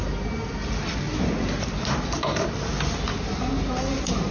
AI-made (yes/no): no